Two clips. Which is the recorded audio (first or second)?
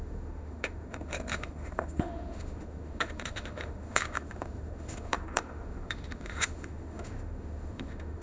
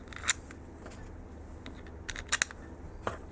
second